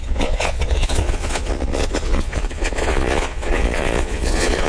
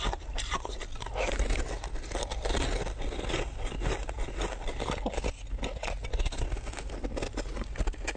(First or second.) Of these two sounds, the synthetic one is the first